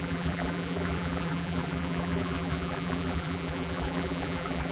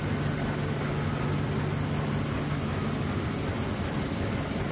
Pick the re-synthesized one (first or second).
first